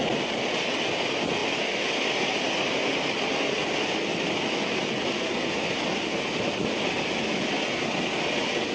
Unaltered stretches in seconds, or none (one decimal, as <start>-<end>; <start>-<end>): 0.0-8.7